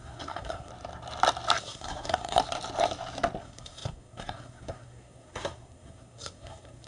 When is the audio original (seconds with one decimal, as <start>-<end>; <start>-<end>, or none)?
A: 0.7-1.6; 2.4-3.4